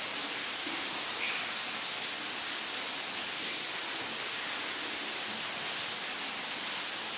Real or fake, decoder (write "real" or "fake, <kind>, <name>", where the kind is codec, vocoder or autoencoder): real